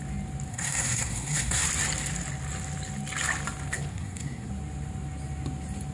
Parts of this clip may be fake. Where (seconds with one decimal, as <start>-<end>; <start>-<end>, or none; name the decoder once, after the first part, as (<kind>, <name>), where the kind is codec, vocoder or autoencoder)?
0.5-1.6 (codec, SNAC); 3.9-4.5